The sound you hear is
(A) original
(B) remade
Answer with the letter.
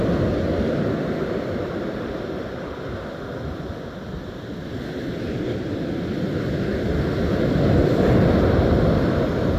A